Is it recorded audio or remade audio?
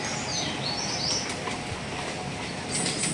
recorded